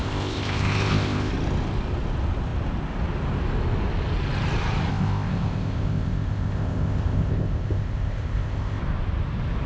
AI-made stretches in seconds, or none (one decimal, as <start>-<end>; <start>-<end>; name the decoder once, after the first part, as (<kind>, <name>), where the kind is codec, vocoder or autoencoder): 0.0-1.3 (codec, ZipCodec); 4.9-8.8